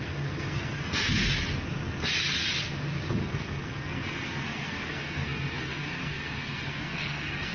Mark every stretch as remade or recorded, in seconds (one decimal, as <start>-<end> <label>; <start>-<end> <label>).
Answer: 0.0-1.0 remade; 1.0-3.2 recorded; 3.2-7.5 remade